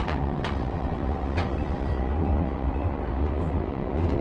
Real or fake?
fake